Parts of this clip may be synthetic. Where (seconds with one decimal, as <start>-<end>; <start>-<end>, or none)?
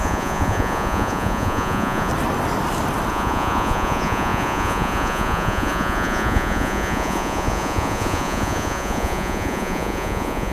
0.0-2.1; 3.1-10.5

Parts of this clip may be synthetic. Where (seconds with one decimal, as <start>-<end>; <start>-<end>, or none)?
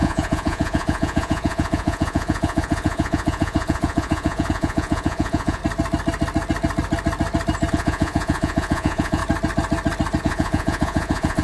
0.0-5.6; 7.7-9.2; 10.2-11.4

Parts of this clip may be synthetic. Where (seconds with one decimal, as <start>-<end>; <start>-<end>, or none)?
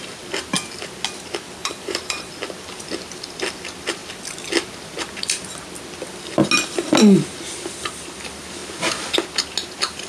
1.6-2.3